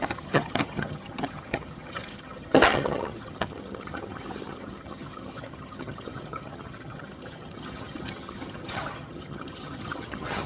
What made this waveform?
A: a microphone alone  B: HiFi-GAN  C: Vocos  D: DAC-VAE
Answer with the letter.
B